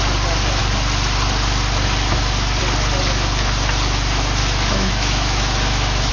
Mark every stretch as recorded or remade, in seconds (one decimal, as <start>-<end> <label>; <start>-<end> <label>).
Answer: 0.0-4.4 recorded; 4.4-6.1 remade